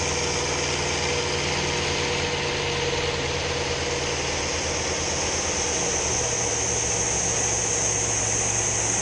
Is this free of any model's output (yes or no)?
yes